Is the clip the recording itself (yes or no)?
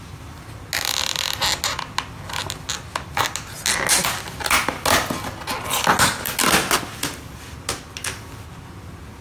yes